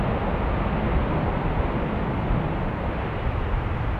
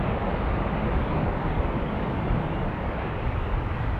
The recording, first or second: first